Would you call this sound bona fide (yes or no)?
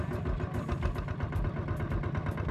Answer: yes